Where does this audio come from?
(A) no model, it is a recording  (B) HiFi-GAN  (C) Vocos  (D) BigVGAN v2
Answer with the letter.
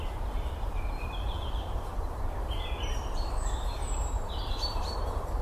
D